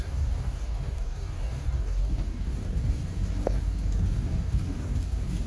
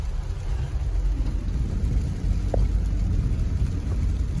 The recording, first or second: second